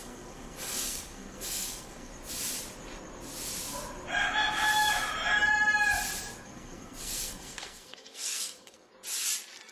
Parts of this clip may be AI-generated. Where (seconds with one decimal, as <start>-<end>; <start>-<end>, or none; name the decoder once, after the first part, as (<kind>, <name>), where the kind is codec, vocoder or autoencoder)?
0.0-2.1 (codec, SNAC); 6.4-8.9